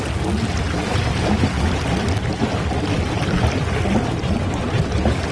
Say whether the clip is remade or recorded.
recorded